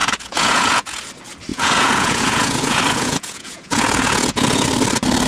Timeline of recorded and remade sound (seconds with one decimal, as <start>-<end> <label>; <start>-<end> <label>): 0.0-1.0 remade; 1.0-1.5 recorded; 1.5-4.7 remade; 4.7-5.3 recorded